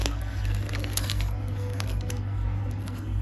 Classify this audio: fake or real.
fake